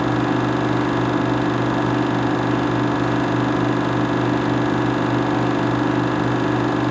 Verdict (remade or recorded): recorded